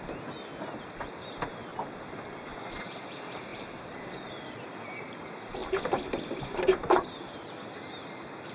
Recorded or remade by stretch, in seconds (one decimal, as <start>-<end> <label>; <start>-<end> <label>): 0.0-1.7 recorded; 1.7-2.5 remade; 2.5-3.5 recorded; 3.5-4.3 remade; 4.3-5.6 recorded; 5.6-7.2 remade; 7.2-8.5 recorded